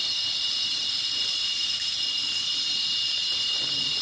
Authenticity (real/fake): real